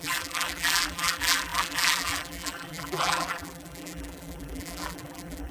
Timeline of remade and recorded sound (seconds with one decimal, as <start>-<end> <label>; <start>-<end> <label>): 0.0-5.5 remade

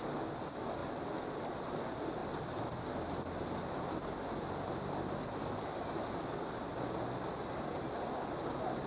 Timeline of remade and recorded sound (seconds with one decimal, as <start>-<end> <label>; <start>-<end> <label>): 0.0-2.2 recorded; 2.2-2.9 remade; 2.9-8.9 recorded